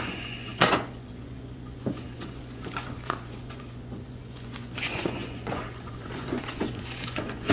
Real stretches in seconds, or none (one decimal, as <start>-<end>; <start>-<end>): none